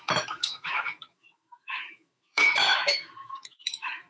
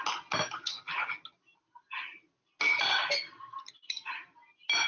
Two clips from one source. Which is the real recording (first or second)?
second